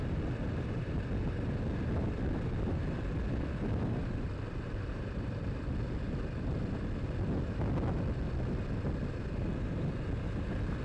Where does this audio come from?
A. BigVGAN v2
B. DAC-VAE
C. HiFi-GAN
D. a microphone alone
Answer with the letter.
D